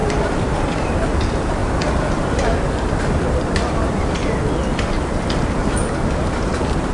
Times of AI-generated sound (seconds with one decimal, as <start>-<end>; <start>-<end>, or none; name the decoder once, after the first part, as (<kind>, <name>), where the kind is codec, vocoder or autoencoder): 0.0-1.0 (vocoder, BigVGAN v2)

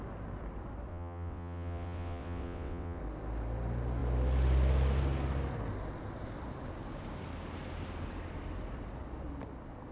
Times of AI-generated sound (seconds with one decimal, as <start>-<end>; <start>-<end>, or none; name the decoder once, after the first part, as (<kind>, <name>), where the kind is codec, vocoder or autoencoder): 0.9-3.0 (vocoder, WaveNeXt)

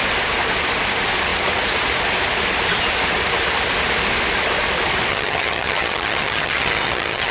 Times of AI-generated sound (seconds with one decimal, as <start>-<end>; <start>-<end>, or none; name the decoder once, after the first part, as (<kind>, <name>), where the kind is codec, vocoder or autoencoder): 5.1-7.3 (vocoder, HiFi-GAN)

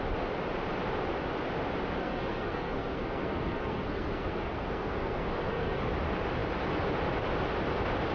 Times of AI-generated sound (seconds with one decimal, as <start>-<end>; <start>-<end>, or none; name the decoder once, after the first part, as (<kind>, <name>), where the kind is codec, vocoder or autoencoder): 2.0-5.9 (codec, SNAC)

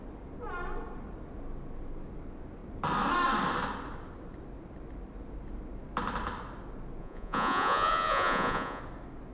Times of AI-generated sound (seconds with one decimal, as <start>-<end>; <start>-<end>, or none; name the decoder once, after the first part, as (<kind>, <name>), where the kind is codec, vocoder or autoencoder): 7.0-8.8 (vocoder, Vocos)

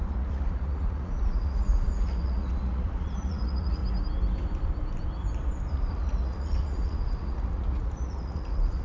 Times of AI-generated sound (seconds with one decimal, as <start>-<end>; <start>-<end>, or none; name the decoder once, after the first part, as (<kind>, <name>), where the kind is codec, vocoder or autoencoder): 0.0-3.8 (vocoder, Vocos); 5.7-8.8

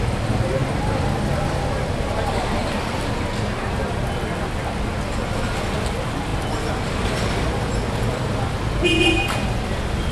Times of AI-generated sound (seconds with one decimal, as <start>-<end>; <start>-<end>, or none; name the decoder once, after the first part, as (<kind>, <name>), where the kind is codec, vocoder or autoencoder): none

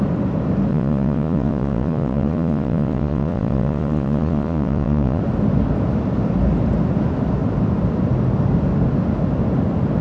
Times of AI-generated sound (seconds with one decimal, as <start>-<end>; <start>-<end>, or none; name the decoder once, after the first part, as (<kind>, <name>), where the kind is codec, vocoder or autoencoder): 0.7-5.2 (vocoder, Vocos)